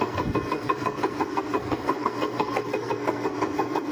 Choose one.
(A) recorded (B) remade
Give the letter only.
B